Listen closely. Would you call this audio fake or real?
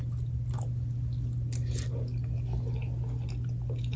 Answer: real